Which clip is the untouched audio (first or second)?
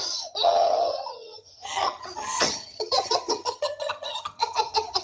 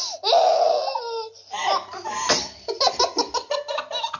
second